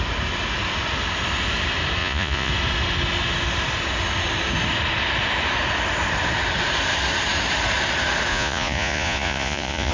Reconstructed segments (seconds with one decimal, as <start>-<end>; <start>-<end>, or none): 2.0-2.5; 8.3-9.9